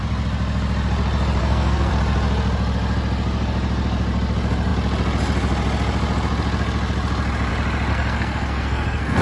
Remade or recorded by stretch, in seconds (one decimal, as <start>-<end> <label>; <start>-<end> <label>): 0.0-1.4 recorded; 1.4-1.9 remade; 1.9-7.9 recorded; 7.9-9.2 remade